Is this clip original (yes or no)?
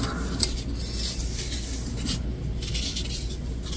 yes